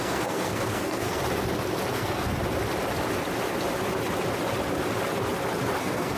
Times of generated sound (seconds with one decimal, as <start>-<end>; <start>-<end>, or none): 0.0-1.2; 1.9-2.3; 5.8-6.2